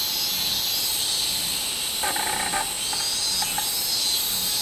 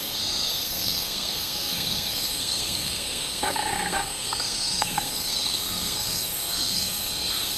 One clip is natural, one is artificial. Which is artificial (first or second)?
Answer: second